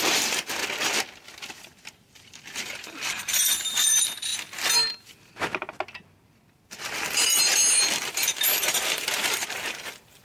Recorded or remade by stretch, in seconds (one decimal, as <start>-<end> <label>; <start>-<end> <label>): 0.0-0.6 remade; 0.6-1.9 recorded; 1.9-4.3 remade; 4.3-6.7 recorded; 6.7-7.5 remade; 7.5-8.1 recorded; 8.1-10.2 remade